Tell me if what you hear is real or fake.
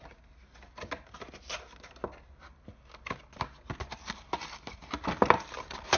real